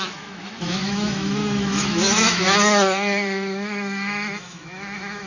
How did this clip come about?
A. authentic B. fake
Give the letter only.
B